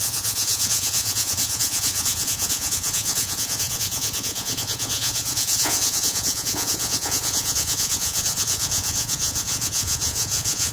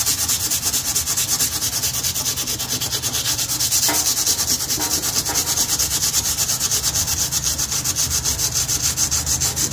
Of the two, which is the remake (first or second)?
first